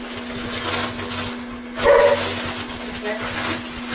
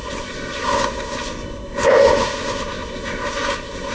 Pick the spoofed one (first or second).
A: second